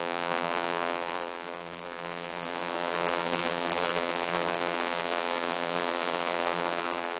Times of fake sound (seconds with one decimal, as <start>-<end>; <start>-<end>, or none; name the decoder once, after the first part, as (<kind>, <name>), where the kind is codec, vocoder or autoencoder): 0.0-7.2 (vocoder, BigVGAN v2)